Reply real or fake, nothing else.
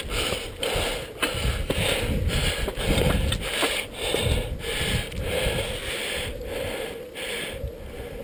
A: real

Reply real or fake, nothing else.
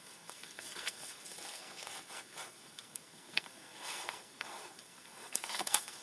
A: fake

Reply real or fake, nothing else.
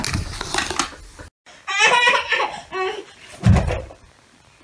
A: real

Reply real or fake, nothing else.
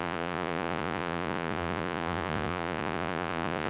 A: fake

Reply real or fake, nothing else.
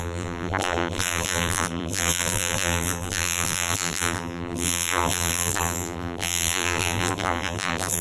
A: fake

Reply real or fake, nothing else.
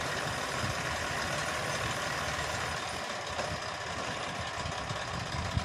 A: real